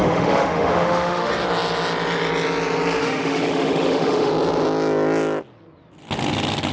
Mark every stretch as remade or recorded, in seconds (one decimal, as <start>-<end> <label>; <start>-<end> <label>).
0.0-1.3 remade; 1.3-3.0 recorded; 3.0-4.3 remade; 4.3-6.7 recorded